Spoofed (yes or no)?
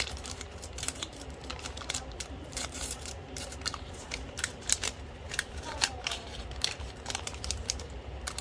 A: yes